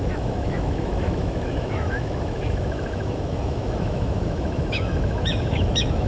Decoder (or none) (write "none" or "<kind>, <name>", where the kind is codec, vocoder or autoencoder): autoencoder, DAC-VAE